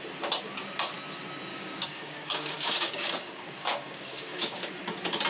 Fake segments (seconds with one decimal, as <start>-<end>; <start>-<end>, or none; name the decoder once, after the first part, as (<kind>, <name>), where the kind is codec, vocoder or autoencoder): 1.5-4.7 (codec, DAC)